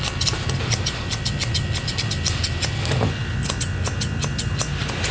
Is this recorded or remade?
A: recorded